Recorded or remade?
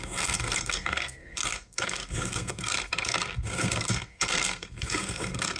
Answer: remade